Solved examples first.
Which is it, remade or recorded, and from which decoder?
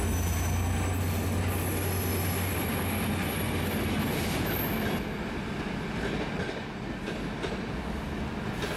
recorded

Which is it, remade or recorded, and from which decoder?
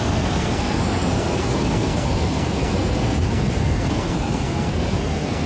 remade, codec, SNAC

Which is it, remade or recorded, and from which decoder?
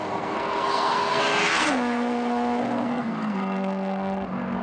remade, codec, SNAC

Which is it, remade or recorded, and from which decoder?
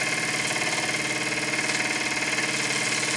recorded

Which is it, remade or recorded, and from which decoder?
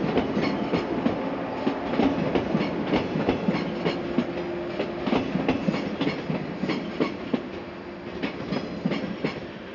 recorded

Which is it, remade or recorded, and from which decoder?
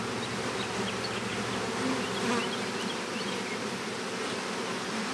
recorded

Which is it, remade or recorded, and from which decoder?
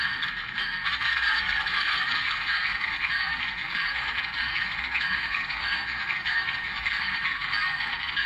remade, codec, SNAC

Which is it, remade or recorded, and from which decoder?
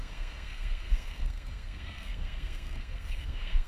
remade, codec, SNAC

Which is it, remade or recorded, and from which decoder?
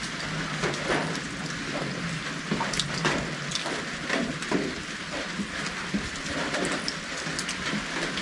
recorded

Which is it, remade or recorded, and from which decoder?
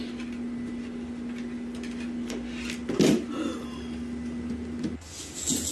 recorded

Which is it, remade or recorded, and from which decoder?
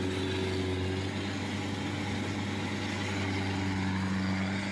recorded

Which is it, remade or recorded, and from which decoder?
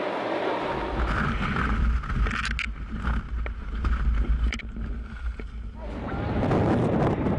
recorded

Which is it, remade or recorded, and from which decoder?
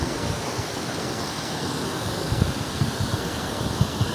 remade, codec, SNAC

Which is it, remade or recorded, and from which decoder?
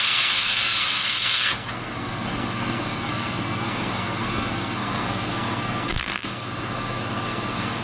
remade, codec, SNAC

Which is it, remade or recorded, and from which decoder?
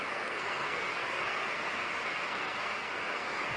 remade, codec, SNAC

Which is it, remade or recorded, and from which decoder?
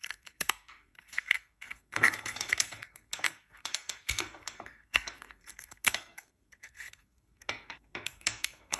remade, codec, SNAC